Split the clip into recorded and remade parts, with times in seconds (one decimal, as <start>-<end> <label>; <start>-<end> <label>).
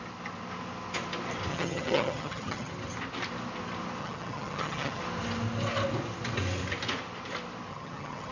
0.0-1.5 recorded; 1.5-2.7 remade; 2.7-4.0 recorded; 4.0-5.0 remade; 5.0-7.7 recorded; 7.7-8.3 remade